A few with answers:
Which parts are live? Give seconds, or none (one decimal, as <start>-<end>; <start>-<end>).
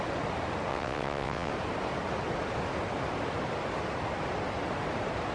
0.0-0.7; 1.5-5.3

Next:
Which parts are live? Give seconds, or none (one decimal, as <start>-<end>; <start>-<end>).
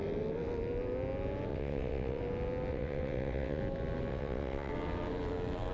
0.0-1.5; 2.2-2.7; 3.6-4.1; 4.7-5.7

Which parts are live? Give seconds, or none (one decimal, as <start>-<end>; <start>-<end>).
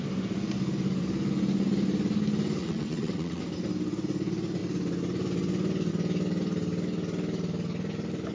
0.0-2.6; 3.4-8.3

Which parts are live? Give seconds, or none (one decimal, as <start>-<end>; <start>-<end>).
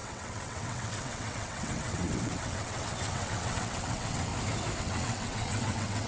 4.3-4.8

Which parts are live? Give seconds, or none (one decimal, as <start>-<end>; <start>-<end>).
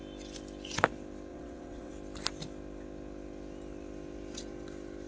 0.0-1.3; 1.9-5.1